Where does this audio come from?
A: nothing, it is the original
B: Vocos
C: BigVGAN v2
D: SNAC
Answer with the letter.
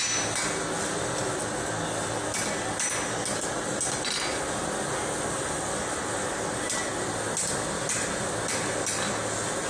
A